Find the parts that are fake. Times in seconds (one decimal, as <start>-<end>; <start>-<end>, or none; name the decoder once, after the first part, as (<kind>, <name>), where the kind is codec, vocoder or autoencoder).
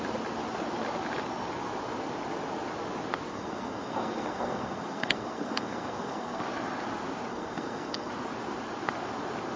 3.3-6.4 (codec, SNAC); 7.3-8.1